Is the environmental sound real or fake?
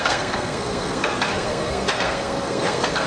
fake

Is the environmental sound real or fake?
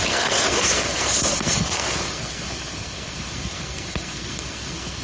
fake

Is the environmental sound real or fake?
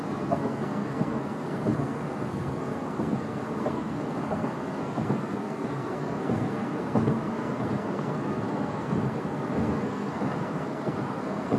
fake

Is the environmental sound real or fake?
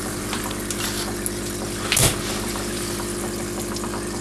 real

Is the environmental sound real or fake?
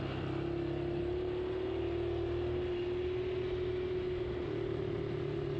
real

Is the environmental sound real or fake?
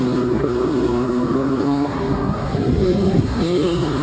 fake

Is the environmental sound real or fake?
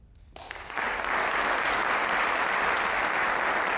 real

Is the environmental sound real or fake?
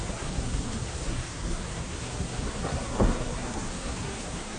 fake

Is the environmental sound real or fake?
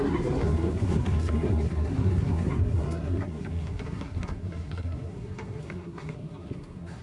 fake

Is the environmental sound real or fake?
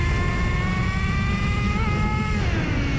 real